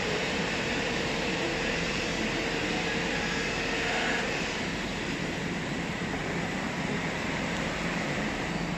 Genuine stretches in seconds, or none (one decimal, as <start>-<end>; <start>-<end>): 2.1-4.1; 6.2-6.7